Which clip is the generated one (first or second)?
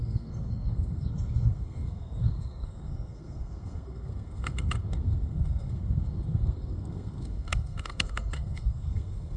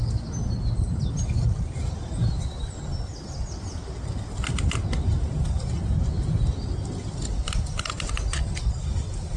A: first